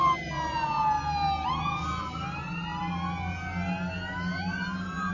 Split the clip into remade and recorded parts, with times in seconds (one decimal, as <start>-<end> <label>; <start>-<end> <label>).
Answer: 0.0-5.1 recorded